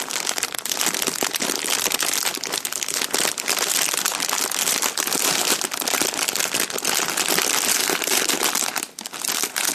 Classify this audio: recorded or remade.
recorded